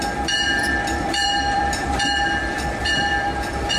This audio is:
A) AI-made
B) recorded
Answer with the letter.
A